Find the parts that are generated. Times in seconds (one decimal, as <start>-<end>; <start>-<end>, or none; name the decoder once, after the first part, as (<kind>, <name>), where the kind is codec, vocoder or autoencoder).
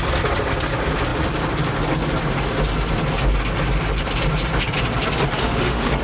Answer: 5.4-6.0 (autoencoder, DAC-VAE)